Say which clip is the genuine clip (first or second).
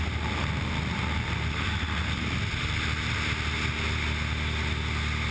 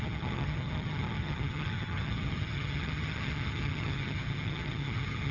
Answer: first